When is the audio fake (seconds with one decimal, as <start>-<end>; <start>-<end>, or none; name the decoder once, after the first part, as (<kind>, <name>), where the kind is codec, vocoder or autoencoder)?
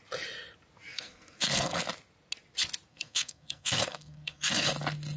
0.9-1.8 (codec, SNAC); 2.9-4.7